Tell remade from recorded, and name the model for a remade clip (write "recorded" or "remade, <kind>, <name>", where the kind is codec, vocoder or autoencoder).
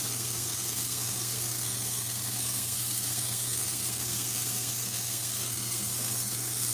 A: remade, codec, SNAC